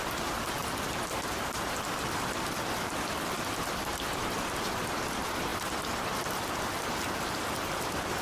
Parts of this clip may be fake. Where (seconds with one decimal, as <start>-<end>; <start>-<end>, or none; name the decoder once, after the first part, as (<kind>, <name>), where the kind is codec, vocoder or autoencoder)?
none